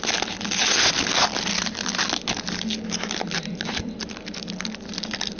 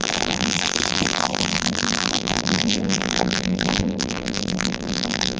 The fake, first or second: second